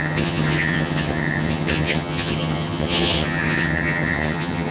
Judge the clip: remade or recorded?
remade